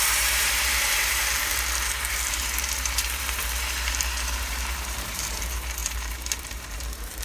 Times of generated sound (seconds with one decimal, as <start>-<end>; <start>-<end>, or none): 0.0-7.2